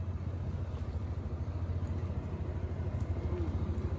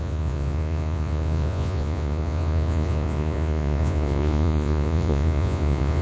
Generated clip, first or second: second